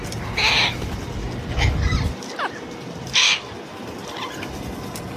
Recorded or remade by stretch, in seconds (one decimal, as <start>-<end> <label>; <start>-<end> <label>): 0.0-1.5 recorded; 1.5-4.6 remade; 4.6-5.2 recorded